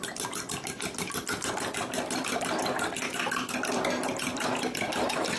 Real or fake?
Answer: real